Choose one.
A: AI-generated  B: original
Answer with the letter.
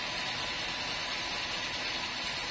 B